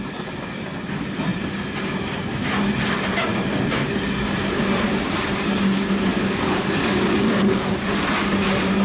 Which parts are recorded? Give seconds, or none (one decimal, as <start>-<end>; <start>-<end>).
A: 0.0-6.1; 7.7-8.8